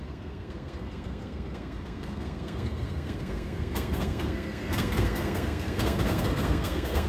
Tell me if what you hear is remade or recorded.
remade